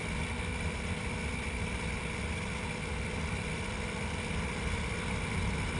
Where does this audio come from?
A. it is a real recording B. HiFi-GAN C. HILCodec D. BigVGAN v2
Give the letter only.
A